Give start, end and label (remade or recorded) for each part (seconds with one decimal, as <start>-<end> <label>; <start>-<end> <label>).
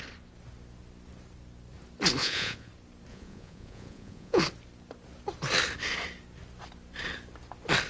0.0-2.2 recorded; 2.2-2.7 remade; 2.7-3.1 recorded; 3.1-4.4 remade; 4.4-7.9 recorded